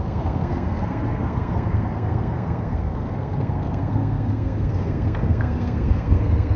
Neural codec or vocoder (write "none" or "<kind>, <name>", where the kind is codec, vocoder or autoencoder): codec, SNAC